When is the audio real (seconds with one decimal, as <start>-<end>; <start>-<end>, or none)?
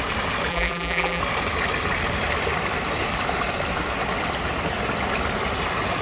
0.0-0.5; 1.2-6.0